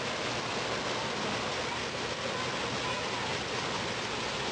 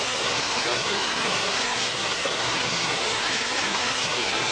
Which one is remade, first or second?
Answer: second